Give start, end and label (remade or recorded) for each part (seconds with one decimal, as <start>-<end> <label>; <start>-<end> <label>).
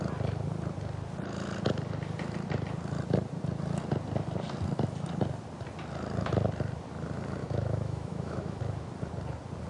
0.0-7.4 recorded; 7.4-8.6 remade; 8.6-9.7 recorded